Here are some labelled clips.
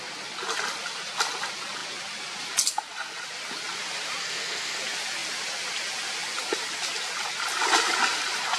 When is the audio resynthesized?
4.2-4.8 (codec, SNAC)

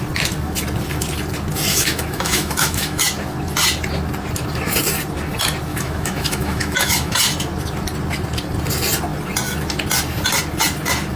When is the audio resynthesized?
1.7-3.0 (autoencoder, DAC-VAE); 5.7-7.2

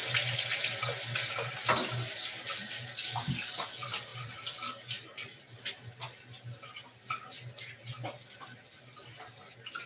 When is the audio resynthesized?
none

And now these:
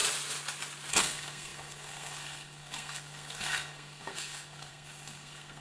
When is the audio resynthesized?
0.9-5.6 (codec, SNAC)